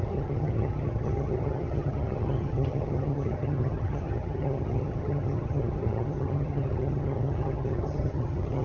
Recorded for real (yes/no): no